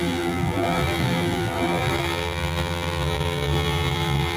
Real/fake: fake